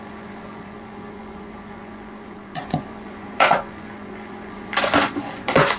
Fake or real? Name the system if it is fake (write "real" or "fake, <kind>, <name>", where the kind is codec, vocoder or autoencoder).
fake, vocoder, Vocos